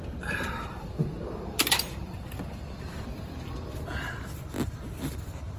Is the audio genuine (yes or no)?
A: no